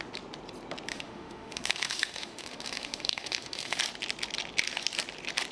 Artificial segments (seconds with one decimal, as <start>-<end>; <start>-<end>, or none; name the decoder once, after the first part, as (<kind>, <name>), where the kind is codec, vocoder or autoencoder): 0.9-3.8 (autoencoder, DAC-VAE)